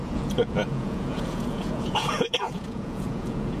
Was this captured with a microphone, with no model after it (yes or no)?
no